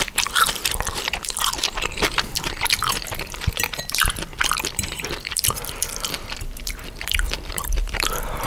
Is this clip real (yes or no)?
no